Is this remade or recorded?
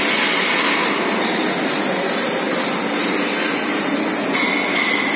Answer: recorded